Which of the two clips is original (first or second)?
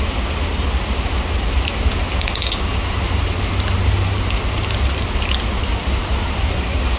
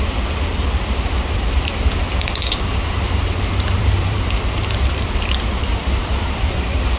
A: first